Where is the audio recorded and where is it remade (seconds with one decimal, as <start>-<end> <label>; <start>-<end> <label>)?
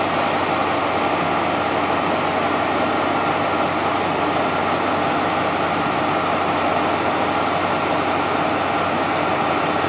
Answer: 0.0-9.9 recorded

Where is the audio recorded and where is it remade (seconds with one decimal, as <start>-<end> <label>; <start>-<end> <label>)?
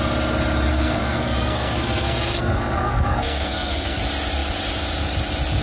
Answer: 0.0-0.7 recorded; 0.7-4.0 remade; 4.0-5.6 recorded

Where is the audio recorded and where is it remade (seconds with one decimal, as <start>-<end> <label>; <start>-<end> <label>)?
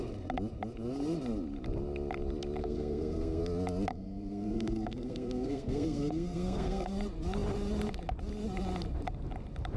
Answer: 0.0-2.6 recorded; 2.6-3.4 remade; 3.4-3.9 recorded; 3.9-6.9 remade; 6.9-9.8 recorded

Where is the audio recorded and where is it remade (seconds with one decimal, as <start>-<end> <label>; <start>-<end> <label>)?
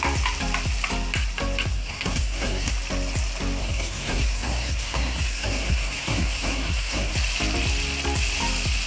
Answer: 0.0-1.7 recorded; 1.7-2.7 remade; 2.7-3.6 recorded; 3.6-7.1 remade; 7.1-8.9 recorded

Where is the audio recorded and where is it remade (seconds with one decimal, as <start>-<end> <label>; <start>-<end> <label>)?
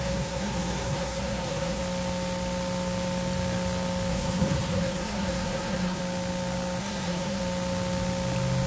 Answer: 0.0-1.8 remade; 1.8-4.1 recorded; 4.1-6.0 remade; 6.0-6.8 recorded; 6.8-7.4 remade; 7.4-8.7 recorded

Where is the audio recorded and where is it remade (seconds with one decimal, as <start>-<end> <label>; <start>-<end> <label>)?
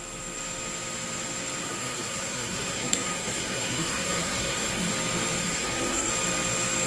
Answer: 0.0-1.6 recorded; 1.6-4.9 remade; 4.9-5.4 recorded; 5.4-6.1 remade; 6.1-6.9 recorded